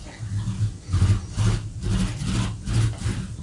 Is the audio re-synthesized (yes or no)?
no